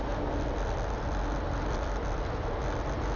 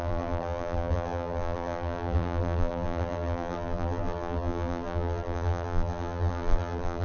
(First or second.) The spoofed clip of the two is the second